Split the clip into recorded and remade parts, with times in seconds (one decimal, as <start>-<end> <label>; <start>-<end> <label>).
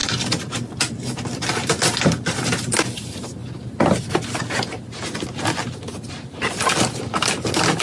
0.0-7.8 recorded